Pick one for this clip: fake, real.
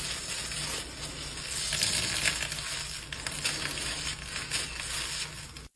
real